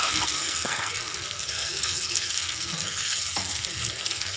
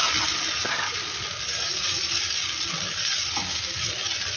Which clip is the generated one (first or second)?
first